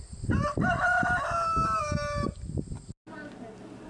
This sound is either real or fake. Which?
real